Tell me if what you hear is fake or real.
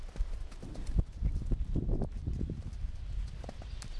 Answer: real